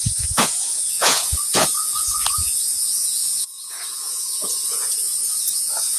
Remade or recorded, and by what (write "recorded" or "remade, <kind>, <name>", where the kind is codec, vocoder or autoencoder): remade, vocoder, Vocos